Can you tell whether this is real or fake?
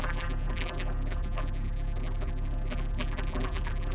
fake